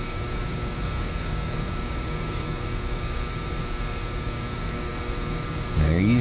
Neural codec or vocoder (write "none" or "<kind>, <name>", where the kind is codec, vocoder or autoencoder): codec, DAC